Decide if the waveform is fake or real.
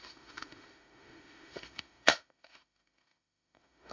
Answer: fake